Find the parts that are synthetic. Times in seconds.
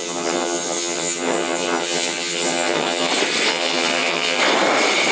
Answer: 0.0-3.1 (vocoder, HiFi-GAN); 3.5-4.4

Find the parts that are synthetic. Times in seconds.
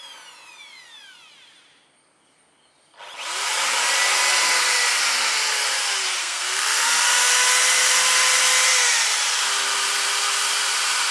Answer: 6.2-6.9 (codec, SNAC)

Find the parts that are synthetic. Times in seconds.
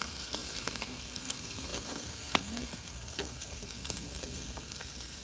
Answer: 0.0-5.2 (codec, SNAC)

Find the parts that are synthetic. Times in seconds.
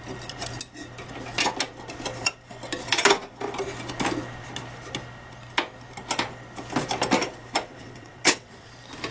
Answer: 7.7-8.7 (vocoder, WaveNeXt)